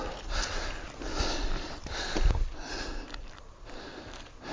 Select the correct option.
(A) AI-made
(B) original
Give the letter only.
B